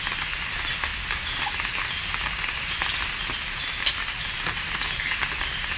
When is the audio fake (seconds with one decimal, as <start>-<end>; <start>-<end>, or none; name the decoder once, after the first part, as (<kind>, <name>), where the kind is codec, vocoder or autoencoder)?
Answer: none